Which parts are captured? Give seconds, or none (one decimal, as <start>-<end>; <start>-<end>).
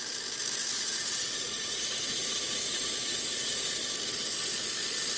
0.0-0.6; 3.7-5.2